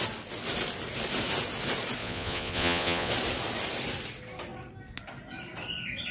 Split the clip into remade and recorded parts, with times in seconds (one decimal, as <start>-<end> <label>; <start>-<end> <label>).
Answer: 0.0-2.0 recorded; 2.0-3.1 remade; 3.1-6.1 recorded